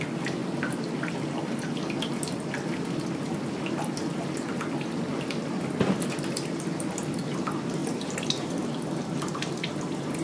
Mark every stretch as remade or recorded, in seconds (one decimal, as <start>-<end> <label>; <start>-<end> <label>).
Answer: 0.0-10.2 recorded